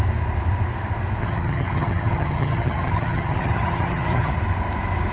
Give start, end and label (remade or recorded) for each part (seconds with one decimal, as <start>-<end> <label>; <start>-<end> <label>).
0.0-1.2 recorded; 1.2-4.3 remade; 4.3-5.1 recorded